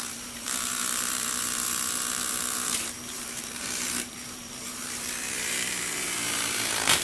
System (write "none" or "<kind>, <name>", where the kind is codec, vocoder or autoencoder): vocoder, BigVGAN v2